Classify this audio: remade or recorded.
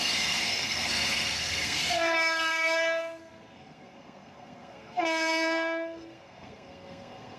remade